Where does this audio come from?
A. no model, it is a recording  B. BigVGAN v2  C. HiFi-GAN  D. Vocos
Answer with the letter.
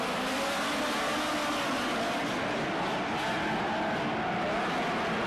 A